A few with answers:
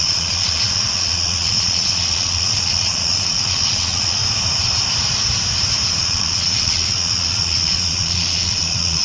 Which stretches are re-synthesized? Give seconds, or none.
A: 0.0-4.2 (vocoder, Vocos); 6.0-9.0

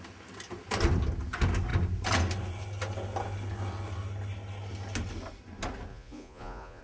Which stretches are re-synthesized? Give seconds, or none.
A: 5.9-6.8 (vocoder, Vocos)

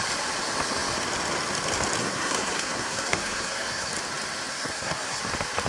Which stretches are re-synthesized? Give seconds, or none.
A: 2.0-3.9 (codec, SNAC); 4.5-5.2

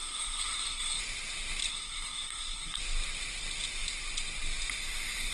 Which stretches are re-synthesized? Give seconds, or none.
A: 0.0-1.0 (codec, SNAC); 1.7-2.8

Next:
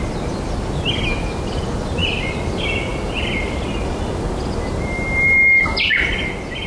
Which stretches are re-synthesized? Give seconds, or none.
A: 2.0-2.5 (vocoder, BigVGAN v2); 2.9-3.7